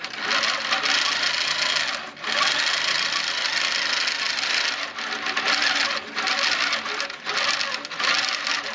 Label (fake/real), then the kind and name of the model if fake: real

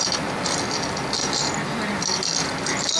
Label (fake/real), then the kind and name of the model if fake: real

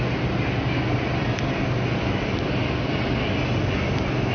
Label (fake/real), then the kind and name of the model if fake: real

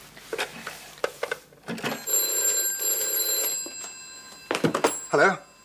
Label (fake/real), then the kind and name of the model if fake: real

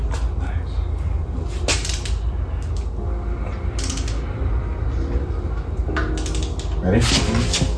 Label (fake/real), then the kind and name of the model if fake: real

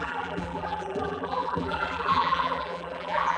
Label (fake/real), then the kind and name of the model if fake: fake, vocoder, BigVGAN v2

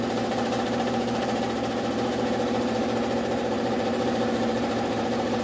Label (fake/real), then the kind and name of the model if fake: fake, vocoder, BigVGAN v2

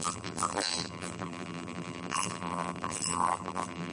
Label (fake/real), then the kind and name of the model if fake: fake, vocoder, BigVGAN v2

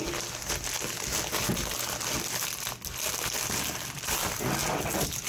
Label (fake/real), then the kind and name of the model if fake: real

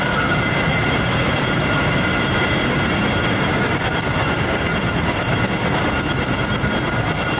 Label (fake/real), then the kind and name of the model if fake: fake, vocoder, BigVGAN v2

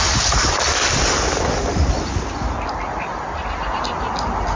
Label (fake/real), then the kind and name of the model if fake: real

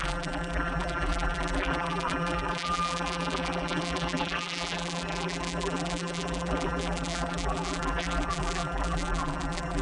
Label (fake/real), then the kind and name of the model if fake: fake, vocoder, BigVGAN v2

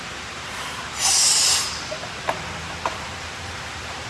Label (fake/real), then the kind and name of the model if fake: fake, vocoder, BigVGAN v2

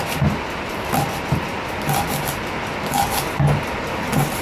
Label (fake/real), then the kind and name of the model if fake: real